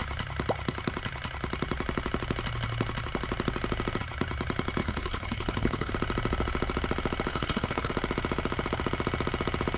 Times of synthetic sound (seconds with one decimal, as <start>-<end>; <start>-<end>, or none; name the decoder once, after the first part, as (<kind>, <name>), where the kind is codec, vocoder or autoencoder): 4.8-5.9 (codec, HILCodec); 7.3-7.9